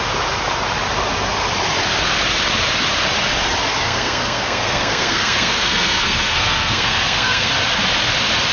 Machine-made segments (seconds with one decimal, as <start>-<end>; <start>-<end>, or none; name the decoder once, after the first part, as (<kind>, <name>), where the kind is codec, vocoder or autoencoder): 3.8-7.5 (codec, SNAC)